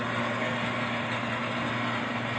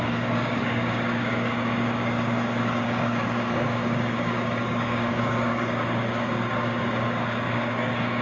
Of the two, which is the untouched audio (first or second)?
first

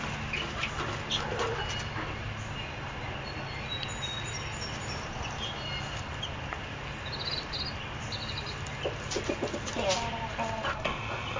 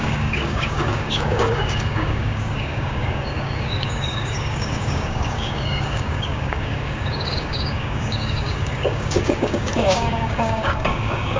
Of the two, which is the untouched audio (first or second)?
first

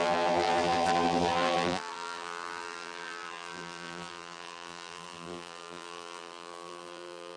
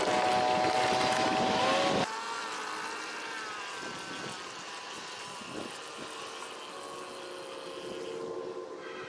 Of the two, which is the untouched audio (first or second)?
second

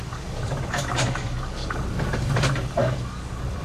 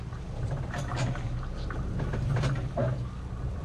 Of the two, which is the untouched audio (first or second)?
second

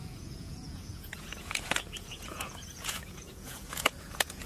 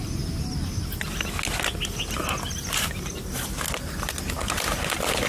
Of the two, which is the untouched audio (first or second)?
second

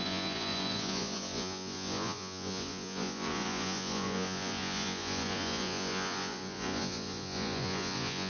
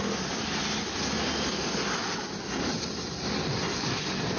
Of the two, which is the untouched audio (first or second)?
second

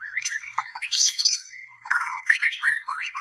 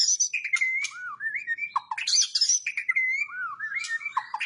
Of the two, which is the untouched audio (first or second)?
second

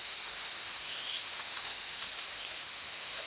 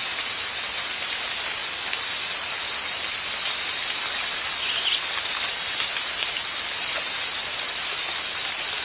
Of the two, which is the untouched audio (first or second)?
second